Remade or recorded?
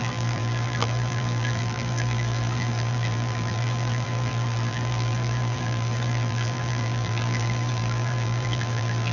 remade